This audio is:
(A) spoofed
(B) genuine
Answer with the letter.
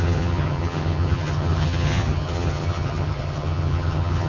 A